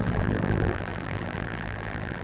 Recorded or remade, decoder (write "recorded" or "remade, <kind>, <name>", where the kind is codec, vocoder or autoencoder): remade, vocoder, BigVGAN v2